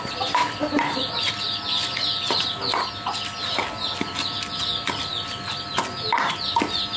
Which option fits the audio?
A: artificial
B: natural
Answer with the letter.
B